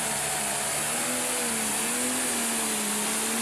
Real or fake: real